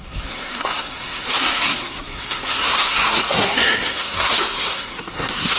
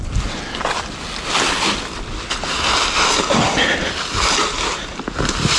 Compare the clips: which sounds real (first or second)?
second